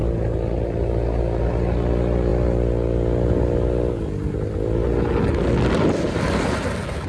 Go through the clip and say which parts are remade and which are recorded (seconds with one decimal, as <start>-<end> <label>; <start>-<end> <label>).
0.0-7.1 recorded